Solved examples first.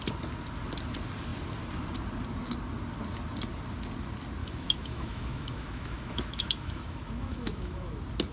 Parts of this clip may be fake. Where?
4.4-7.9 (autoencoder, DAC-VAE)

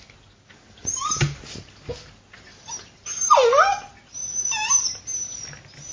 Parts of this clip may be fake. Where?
none

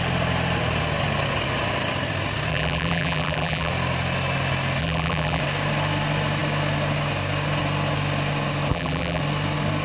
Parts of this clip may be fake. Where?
2.5-3.7 (vocoder, BigVGAN v2); 4.8-5.4; 8.7-9.2

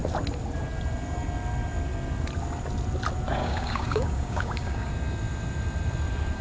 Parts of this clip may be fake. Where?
3.4-4.9 (codec, DAC)

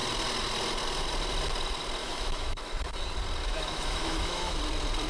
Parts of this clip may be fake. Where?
2.0-2.6 (autoencoder, DAC-VAE); 3.4-4.6

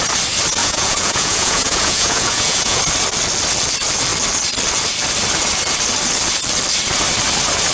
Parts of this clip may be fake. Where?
0.6-2.8 (vocoder, Vocos)

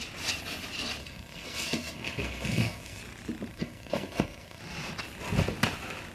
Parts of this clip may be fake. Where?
1.0-3.0 (codec, SNAC); 3.5-4.6